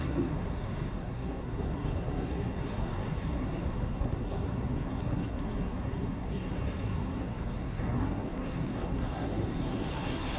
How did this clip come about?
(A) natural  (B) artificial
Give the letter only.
B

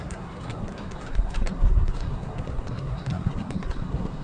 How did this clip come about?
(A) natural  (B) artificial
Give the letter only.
B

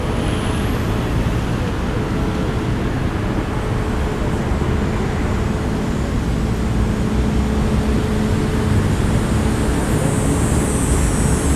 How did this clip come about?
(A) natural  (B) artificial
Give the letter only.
A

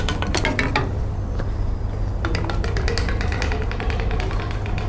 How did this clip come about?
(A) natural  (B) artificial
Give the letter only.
A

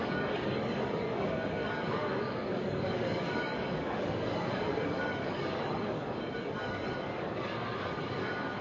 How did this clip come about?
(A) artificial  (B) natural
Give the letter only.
A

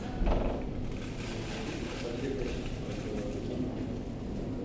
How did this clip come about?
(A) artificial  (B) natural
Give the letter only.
B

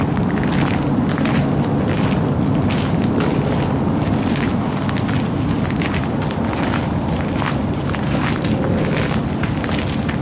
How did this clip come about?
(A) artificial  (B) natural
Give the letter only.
B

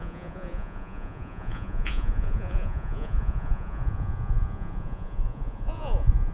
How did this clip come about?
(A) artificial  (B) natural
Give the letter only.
A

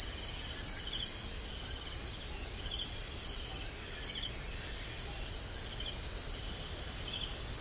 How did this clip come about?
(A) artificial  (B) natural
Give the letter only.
B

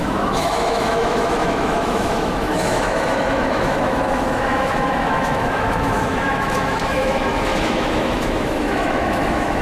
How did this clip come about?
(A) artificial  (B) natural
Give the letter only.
A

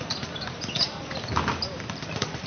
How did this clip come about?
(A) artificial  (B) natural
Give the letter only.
B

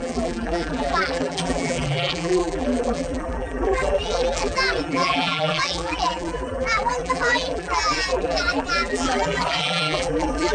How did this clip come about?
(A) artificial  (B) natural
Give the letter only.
A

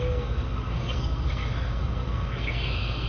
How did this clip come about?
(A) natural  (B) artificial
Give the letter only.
B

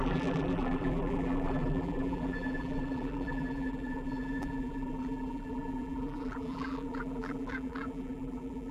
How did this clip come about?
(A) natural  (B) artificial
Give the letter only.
B